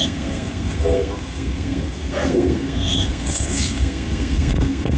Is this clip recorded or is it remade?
remade